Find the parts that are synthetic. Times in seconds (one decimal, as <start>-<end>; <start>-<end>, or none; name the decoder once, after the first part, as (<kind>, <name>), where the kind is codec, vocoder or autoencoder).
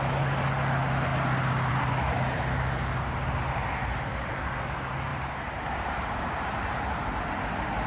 5.1-7.2 (vocoder, BigVGAN v2)